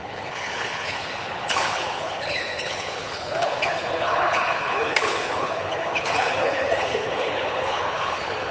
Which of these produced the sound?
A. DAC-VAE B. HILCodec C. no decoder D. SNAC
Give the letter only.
B